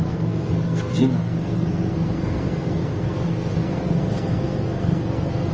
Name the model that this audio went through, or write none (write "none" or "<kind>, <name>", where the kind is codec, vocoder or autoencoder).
codec, SNAC